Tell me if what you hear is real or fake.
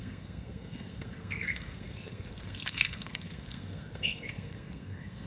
fake